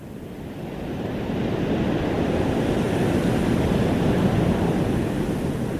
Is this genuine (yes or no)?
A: yes